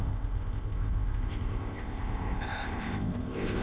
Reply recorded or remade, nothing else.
remade